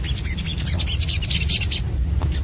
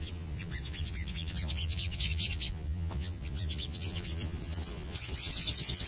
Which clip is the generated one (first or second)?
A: second